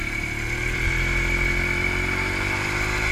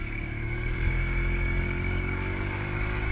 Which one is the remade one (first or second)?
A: second